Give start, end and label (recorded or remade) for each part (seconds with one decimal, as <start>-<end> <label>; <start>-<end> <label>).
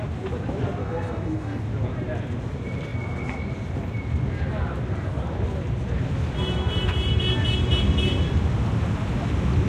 0.0-0.8 recorded; 0.8-1.6 remade; 1.6-9.7 recorded